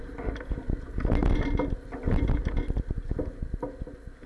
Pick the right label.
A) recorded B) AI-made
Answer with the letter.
A